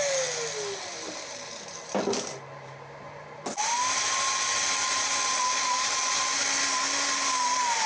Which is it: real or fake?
real